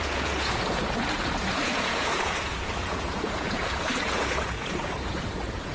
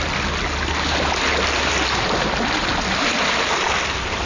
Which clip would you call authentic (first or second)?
second